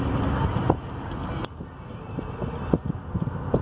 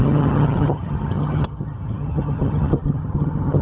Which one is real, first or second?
first